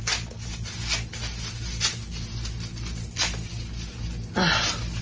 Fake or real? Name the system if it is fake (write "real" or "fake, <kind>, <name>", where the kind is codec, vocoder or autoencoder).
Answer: real